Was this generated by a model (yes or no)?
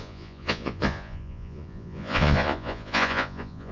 yes